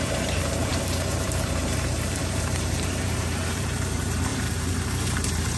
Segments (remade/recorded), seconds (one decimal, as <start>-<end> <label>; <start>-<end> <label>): 0.0-5.6 remade